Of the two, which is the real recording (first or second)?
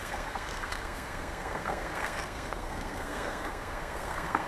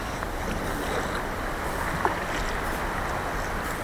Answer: second